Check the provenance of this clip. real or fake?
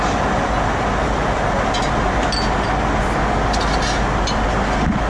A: real